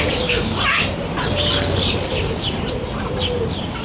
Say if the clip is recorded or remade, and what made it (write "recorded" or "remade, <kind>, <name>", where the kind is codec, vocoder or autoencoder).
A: remade, vocoder, BigVGAN v2